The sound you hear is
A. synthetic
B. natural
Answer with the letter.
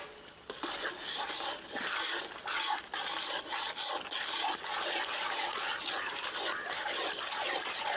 B